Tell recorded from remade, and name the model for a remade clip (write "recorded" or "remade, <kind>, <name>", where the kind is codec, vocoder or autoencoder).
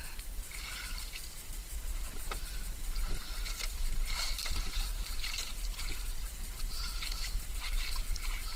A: remade, vocoder, BigVGAN v2